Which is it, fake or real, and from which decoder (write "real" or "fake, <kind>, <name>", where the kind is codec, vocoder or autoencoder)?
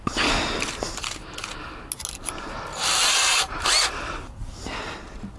real